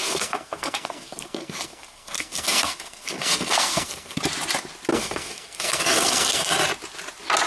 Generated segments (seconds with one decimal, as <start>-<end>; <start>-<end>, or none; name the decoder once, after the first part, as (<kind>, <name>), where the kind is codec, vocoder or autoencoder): 0.0-4.2 (codec, SNAC); 4.9-6.5